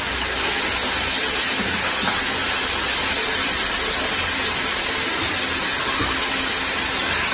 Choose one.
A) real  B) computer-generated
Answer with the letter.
A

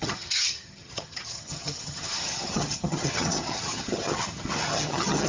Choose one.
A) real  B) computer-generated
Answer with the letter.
B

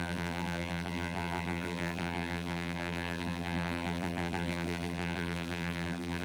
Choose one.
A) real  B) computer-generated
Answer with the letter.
B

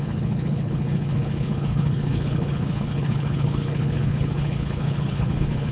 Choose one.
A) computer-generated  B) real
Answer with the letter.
A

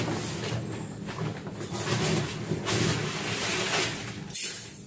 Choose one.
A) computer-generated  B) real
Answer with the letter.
B